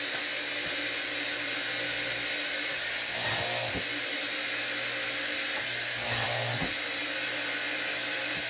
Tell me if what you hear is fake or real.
real